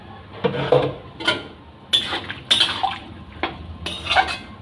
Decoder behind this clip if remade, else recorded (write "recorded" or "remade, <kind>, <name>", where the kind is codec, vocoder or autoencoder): recorded